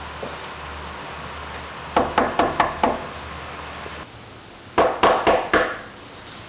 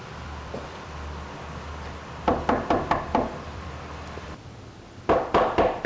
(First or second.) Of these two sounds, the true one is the first